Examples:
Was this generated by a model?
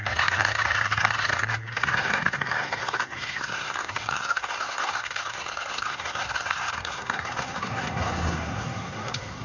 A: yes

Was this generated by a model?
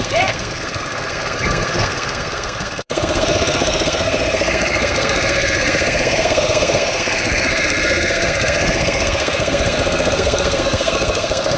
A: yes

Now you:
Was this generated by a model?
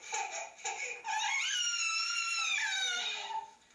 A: no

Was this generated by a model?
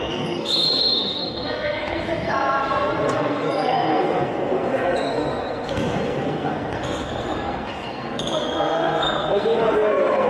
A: yes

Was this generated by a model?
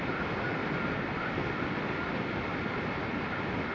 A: no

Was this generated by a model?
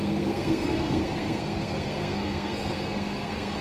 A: yes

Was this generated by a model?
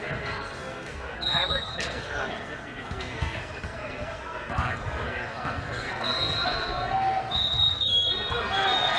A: yes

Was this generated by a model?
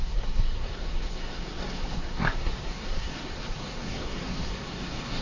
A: yes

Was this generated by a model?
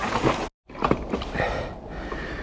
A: no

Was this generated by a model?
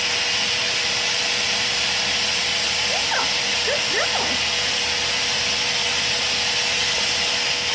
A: no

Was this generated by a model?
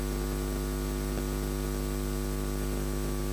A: no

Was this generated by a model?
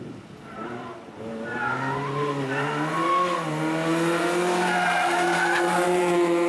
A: no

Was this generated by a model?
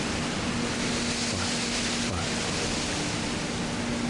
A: no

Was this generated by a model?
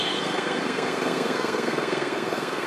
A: yes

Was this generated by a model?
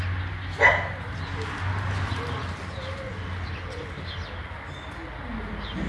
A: no